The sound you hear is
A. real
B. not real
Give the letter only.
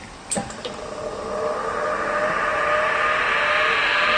A